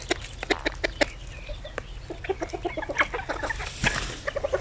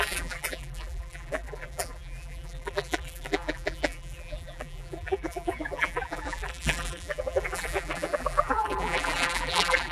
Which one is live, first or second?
first